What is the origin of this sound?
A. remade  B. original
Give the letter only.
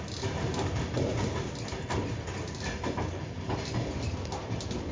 B